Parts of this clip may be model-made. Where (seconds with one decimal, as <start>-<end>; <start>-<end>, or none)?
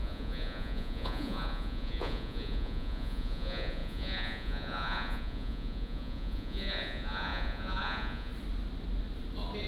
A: 0.0-8.3